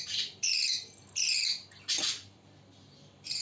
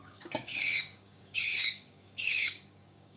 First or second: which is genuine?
first